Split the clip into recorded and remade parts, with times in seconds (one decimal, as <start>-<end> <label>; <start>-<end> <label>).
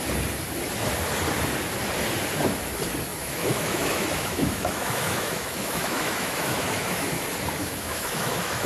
0.0-3.1 recorded; 3.1-7.1 remade; 7.1-7.6 recorded; 7.6-8.7 remade